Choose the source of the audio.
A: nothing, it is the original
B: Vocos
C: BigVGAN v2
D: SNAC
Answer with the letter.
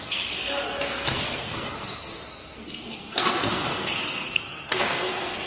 D